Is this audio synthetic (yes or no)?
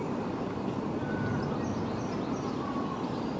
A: no